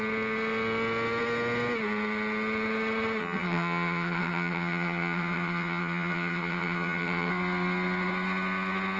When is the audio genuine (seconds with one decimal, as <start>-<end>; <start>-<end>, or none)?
0.0-3.2; 7.3-9.0